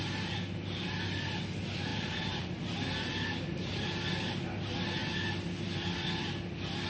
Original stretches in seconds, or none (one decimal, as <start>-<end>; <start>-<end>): 0.0-1.9; 2.6-6.9